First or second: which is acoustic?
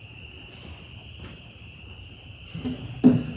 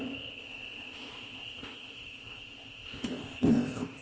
first